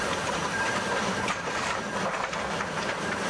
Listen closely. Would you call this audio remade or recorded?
remade